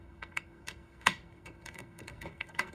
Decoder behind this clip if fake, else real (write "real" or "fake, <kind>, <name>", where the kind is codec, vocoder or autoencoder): fake, codec, SNAC